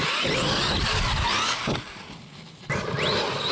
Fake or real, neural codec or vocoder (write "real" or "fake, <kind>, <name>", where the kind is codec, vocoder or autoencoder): real